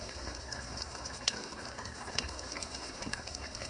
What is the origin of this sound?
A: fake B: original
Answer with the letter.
A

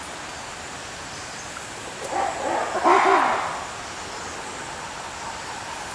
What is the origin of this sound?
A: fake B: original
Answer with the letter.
B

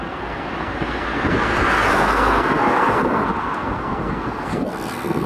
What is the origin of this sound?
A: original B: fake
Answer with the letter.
B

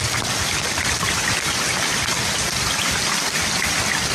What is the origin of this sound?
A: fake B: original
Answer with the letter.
B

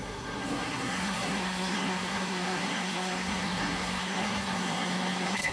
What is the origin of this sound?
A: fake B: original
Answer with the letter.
A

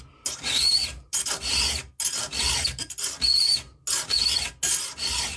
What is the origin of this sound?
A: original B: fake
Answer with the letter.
A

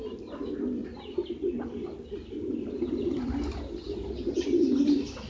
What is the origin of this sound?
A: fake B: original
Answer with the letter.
B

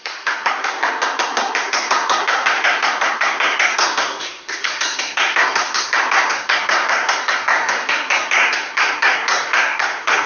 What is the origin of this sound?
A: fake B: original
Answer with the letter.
A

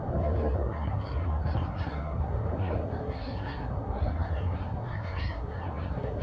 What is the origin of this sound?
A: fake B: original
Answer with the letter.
A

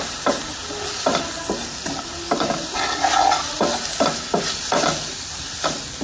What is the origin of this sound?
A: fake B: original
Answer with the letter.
B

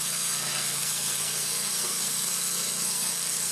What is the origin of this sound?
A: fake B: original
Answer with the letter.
A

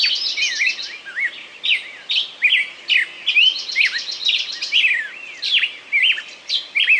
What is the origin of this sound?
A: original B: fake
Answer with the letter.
A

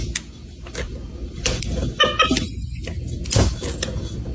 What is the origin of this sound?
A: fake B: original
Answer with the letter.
B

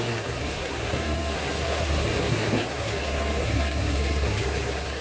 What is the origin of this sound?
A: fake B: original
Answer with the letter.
A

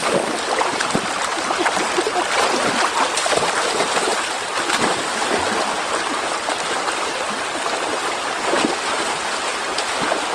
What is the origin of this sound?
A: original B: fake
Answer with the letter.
A